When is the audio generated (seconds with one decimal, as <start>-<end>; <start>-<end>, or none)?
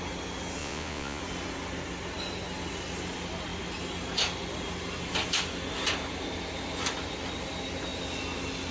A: 0.6-1.2